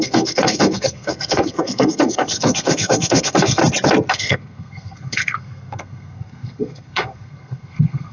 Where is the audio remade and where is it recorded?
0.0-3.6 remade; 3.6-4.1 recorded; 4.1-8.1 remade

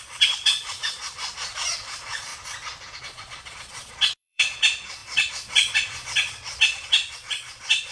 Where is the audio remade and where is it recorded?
0.0-2.3 remade; 2.3-3.0 recorded; 3.0-7.9 remade